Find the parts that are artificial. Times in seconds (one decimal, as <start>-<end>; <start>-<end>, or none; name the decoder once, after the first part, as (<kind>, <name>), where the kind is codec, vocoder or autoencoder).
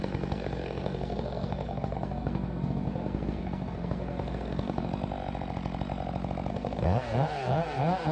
0.0-4.9 (codec, SNAC); 6.5-8.1